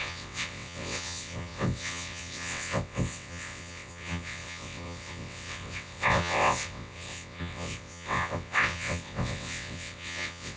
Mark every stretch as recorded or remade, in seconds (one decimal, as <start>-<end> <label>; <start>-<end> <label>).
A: 0.0-10.6 remade